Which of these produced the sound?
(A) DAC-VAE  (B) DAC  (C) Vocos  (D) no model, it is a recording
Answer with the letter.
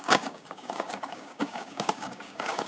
B